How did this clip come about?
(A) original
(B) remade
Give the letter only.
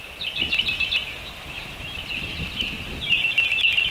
A